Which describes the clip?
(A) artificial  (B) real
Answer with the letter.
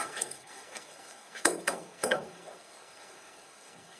A